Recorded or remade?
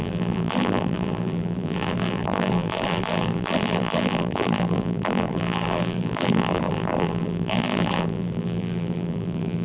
remade